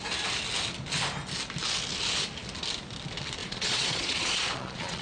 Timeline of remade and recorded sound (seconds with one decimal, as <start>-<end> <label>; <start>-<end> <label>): 0.0-3.4 recorded; 3.4-5.0 remade